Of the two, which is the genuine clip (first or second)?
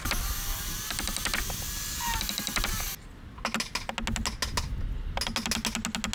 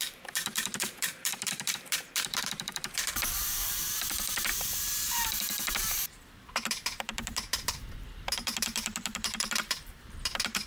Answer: first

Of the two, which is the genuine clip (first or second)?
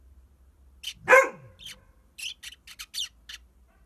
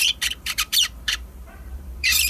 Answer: first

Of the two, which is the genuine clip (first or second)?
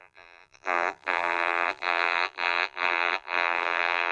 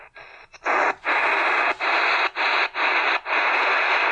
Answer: second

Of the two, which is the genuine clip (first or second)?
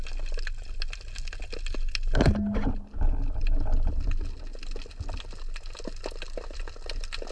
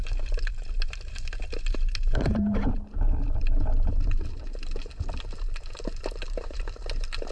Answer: first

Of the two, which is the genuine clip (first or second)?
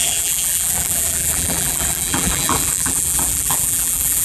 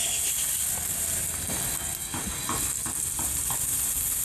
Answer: second